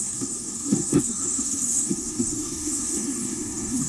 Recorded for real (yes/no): no